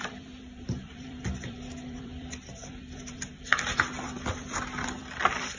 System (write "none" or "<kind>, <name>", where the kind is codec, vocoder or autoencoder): vocoder, BigVGAN v2